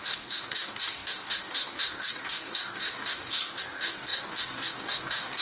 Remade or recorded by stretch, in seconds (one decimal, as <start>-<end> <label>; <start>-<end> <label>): 0.0-5.4 remade